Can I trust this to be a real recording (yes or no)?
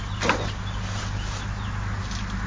yes